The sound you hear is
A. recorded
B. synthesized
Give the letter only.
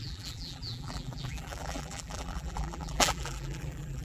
B